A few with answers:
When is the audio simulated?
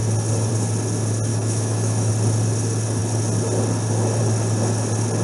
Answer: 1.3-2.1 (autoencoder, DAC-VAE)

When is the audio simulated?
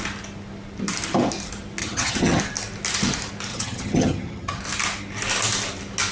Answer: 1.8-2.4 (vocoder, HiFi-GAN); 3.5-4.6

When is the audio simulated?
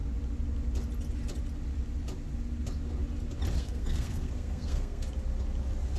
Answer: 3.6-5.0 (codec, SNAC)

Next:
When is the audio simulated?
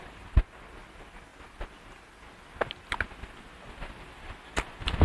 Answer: none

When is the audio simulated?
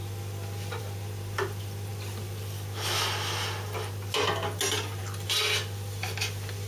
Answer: none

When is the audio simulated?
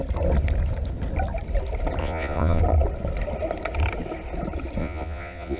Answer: 2.0-2.6 (vocoder, Vocos); 4.8-5.6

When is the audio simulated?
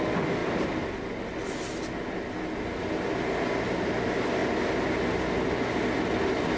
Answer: none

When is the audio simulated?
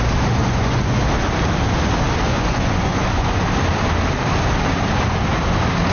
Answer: 0.4-1.0 (vocoder, Vocos); 2.3-3.4